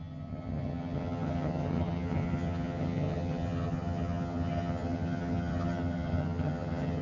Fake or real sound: fake